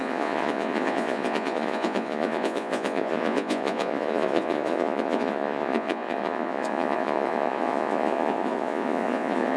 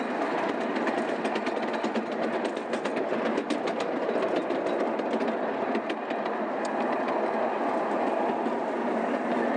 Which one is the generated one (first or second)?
first